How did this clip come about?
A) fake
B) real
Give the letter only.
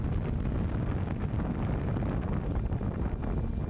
B